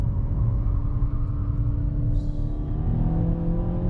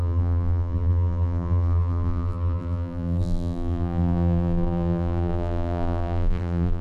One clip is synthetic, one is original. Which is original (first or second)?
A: first